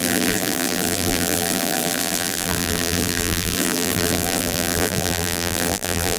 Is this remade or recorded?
remade